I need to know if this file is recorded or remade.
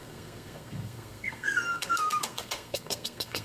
remade